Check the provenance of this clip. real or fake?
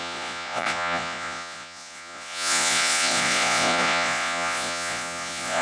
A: fake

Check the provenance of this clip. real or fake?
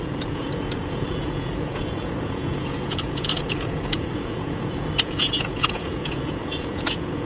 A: fake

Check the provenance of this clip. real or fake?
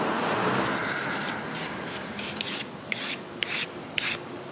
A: real